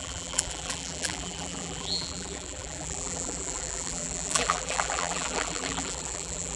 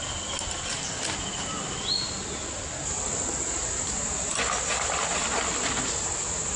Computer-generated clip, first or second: first